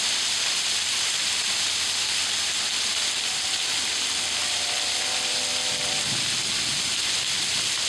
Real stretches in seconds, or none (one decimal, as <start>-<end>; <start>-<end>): 0.0-7.9